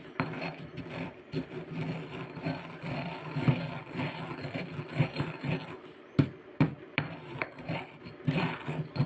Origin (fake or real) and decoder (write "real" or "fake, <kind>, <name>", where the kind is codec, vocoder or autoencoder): fake, vocoder, BigVGAN v2